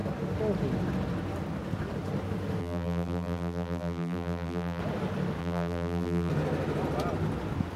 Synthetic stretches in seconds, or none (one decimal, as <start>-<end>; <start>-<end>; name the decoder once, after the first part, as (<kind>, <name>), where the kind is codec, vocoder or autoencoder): 2.6-4.8 (vocoder, BigVGAN v2); 5.4-6.3